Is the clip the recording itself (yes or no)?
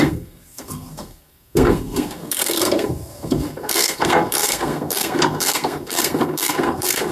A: no